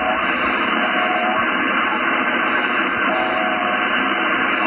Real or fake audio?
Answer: fake